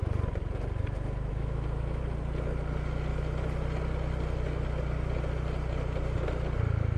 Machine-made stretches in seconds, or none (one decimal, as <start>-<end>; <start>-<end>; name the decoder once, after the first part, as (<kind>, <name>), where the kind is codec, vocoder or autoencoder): 1.3-2.0 (autoencoder, DAC-VAE)